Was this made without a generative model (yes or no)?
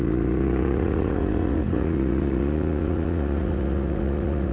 no